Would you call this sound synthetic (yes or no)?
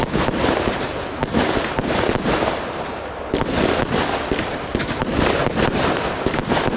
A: no